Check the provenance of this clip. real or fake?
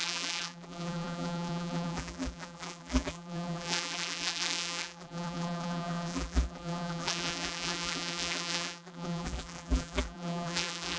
fake